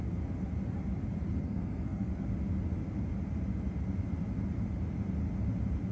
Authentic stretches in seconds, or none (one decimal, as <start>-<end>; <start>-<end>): 0.0-1.4; 2.1-5.9